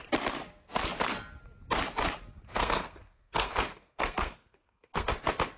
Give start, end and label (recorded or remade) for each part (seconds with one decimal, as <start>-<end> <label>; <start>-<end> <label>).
0.0-2.5 recorded; 2.5-5.1 remade; 5.1-5.6 recorded